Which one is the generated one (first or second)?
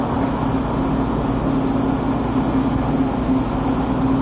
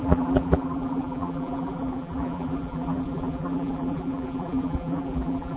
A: second